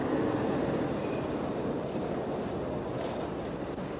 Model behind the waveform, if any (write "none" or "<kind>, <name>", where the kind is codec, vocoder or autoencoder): vocoder, BigVGAN v2